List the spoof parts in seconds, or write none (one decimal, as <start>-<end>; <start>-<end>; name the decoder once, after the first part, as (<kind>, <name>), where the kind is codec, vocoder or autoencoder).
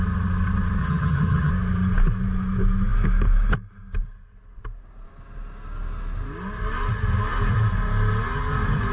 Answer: 0.8-1.5 (vocoder, HiFi-GAN)